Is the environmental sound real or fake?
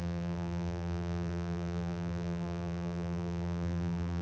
fake